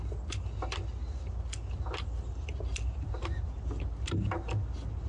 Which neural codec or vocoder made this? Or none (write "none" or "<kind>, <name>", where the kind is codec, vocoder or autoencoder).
none